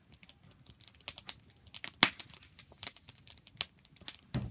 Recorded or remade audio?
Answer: recorded